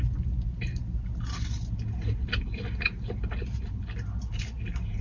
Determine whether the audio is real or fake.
real